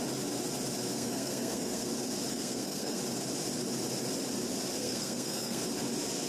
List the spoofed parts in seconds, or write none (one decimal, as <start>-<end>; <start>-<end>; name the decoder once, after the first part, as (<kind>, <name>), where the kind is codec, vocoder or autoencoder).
0.9-1.9 (codec, SNAC); 2.3-3.0; 4.8-5.6